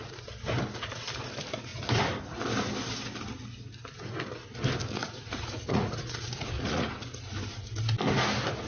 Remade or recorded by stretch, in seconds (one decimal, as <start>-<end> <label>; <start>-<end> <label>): 0.0-5.0 recorded; 5.0-6.9 remade; 6.9-8.7 recorded